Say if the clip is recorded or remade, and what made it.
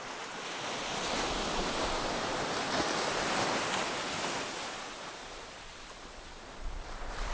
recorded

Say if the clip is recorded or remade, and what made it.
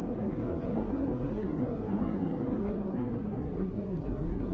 remade, codec, SNAC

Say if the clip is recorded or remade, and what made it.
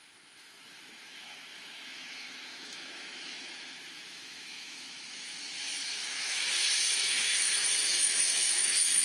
remade, autoencoder, DAC-VAE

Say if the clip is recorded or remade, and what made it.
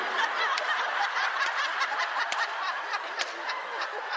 remade, vocoder, BigVGAN v2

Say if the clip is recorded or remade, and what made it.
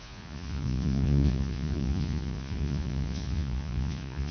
remade, vocoder, Vocos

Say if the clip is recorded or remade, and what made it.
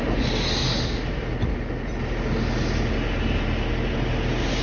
recorded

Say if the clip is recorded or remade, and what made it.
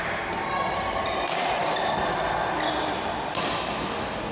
recorded